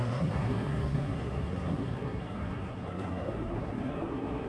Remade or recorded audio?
remade